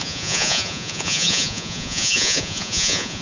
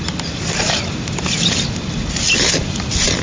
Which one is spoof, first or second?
first